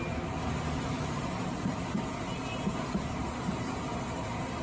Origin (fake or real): real